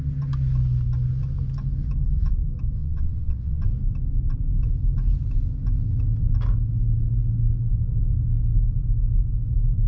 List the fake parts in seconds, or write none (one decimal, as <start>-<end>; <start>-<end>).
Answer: 2.8-3.6